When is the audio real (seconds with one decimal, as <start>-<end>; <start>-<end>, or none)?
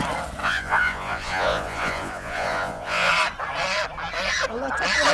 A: 0.0-0.4; 3.1-5.1